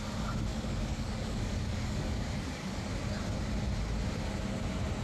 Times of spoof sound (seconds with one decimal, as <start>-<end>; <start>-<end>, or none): 0.5-2.9